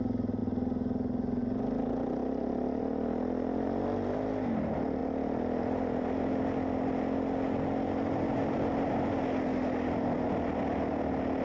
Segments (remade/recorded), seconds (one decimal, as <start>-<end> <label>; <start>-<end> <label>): 0.0-11.4 recorded